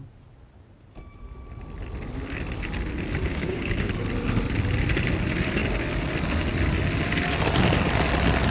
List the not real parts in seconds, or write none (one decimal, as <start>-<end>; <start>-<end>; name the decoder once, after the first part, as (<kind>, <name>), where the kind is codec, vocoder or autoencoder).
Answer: 3.3-3.9 (codec, DAC)